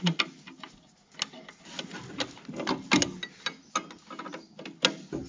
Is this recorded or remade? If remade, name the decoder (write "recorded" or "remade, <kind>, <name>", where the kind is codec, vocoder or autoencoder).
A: recorded